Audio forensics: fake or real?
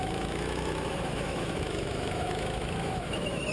fake